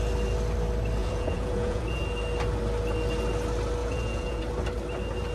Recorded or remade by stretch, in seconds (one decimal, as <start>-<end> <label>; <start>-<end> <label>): 0.0-1.0 recorded; 1.0-2.0 remade; 2.0-3.8 recorded; 3.8-4.4 remade; 4.4-5.3 recorded